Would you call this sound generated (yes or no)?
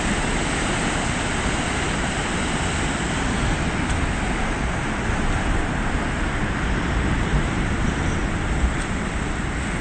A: no